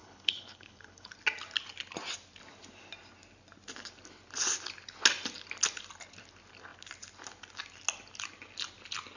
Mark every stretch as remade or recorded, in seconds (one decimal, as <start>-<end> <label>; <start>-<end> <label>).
0.0-1.1 remade; 1.1-9.2 recorded